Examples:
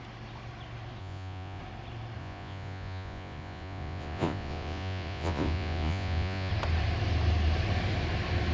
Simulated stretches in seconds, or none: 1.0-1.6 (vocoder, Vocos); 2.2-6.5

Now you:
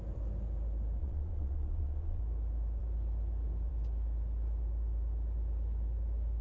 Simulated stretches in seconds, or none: 1.0-2.2 (vocoder, Vocos)

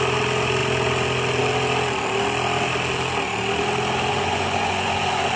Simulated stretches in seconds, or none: 4.1-5.4 (vocoder, Vocos)

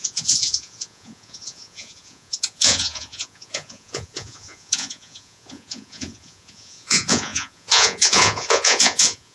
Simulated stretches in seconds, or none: 0.0-9.3 (vocoder, Vocos)